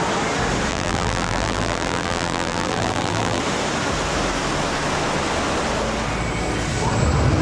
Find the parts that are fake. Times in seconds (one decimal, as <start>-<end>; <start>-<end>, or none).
0.7-3.4

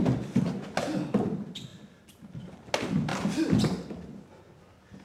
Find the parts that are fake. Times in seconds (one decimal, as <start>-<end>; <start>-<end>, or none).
none

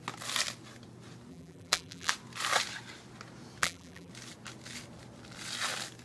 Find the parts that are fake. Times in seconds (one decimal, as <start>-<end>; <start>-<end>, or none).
1.3-2.1; 3.6-4.1

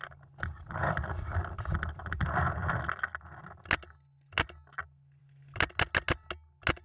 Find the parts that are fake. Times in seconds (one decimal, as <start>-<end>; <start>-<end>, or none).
none